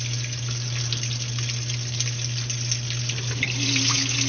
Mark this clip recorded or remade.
recorded